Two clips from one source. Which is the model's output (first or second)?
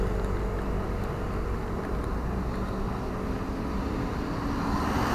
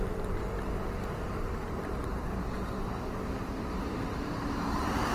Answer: second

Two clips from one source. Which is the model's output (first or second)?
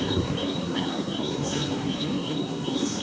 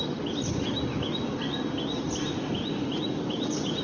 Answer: first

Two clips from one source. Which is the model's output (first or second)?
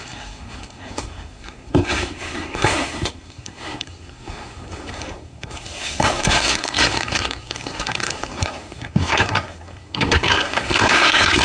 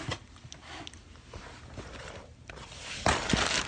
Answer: first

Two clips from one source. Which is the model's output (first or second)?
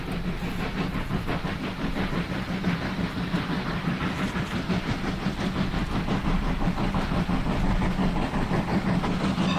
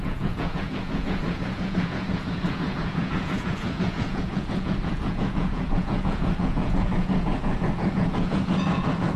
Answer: second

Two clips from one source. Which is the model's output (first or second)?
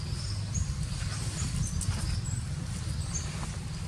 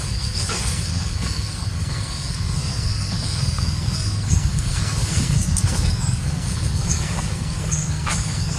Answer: second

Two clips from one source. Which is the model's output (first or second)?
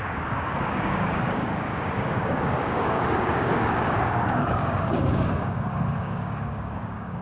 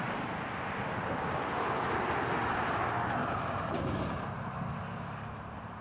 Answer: first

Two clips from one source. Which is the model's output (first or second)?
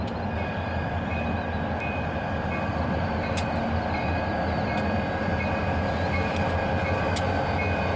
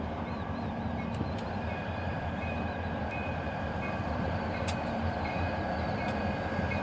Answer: second